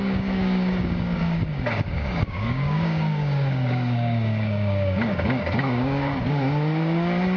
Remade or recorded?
remade